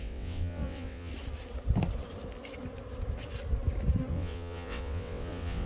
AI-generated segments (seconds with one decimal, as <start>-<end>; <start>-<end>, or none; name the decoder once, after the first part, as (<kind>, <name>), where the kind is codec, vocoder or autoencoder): 0.0-1.1 (vocoder, WaveNeXt); 4.1-5.7